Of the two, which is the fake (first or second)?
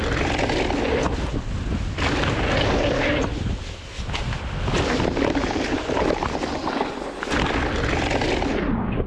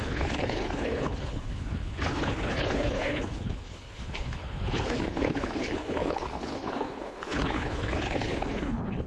second